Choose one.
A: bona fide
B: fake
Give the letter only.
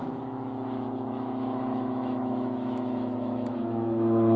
B